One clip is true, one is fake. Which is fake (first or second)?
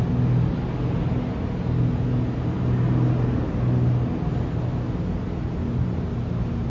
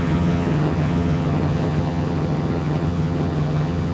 second